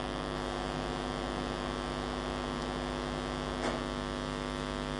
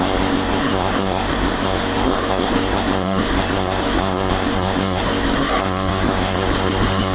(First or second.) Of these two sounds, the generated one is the second